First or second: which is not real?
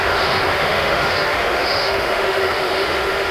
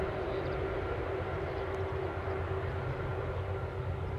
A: first